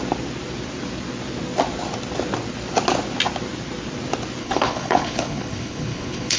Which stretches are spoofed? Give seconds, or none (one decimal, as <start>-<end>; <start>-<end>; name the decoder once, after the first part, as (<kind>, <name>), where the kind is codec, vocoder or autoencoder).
4.4-6.4 (codec, HILCodec)